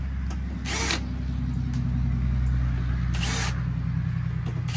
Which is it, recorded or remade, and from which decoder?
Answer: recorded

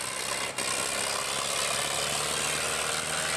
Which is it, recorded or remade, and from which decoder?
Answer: recorded